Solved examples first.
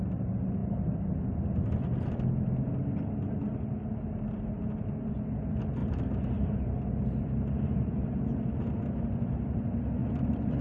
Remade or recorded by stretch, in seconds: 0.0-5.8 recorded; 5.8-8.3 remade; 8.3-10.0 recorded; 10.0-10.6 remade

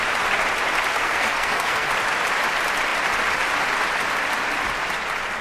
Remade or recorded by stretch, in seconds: 0.0-0.9 recorded; 0.9-1.9 remade; 1.9-5.4 recorded

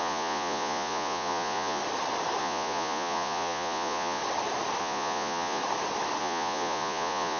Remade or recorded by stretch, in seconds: 0.0-1.8 remade; 1.8-2.4 recorded; 2.4-4.2 remade; 4.2-4.8 recorded; 4.8-5.6 remade; 5.6-6.2 recorded; 6.2-7.4 remade